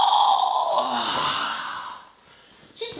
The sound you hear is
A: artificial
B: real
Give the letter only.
B